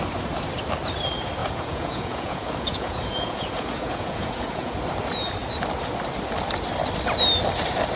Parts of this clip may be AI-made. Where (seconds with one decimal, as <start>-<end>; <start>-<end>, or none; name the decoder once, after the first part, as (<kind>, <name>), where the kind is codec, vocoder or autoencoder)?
1.4-4.8 (vocoder, Vocos)